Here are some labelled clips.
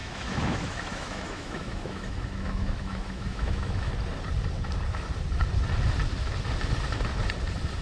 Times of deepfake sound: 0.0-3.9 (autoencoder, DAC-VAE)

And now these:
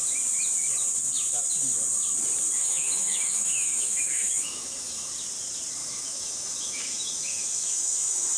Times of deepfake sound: 2.6-5.1 (autoencoder, DAC-VAE); 5.8-8.4

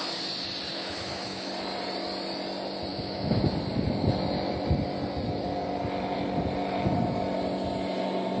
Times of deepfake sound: 0.7-1.5 (autoencoder, DAC-VAE); 2.9-3.4